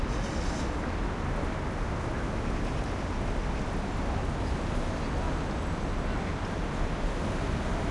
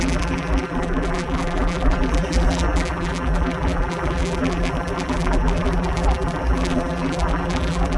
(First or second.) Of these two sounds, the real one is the first